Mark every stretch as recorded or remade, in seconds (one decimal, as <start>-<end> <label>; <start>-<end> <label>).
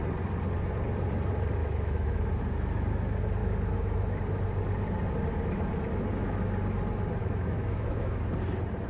0.0-1.6 recorded; 1.6-2.1 remade; 2.1-3.4 recorded; 3.4-4.2 remade; 4.2-7.2 recorded; 7.2-8.2 remade; 8.2-8.9 recorded